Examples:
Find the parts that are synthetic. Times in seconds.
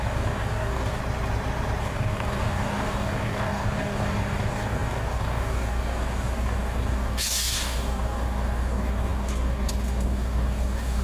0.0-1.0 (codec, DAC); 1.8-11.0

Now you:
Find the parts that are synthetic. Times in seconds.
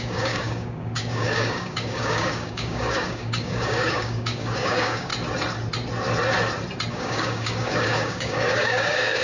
0.0-5.1 (codec, DAC); 6.9-9.2